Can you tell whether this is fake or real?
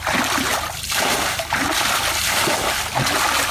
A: real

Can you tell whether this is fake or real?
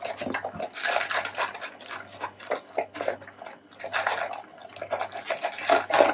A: real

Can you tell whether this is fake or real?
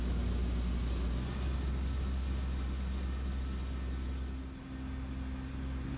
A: real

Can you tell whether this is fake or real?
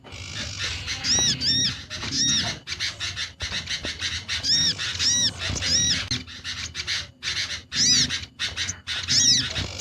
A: real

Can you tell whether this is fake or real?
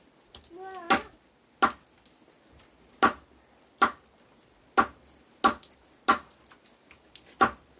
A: real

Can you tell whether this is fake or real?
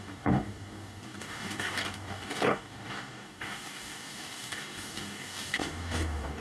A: fake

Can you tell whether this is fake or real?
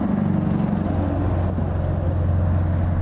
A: real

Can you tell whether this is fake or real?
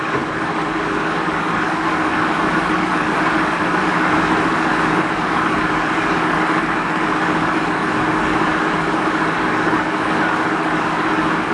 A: fake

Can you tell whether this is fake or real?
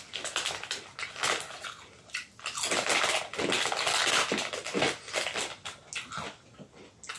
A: real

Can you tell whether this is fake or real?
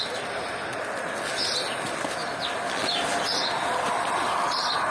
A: real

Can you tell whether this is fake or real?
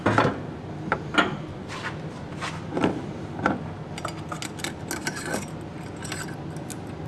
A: real